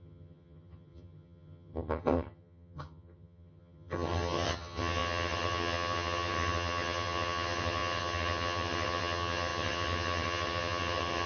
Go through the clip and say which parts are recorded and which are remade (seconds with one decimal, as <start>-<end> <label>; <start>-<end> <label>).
0.0-11.3 remade